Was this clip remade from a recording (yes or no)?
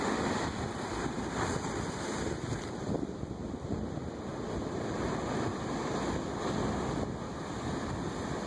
no